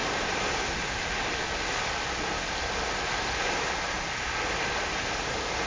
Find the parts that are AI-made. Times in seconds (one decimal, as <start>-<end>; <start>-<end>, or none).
none